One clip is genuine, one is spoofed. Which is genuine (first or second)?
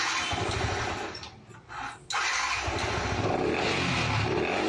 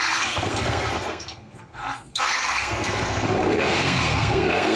first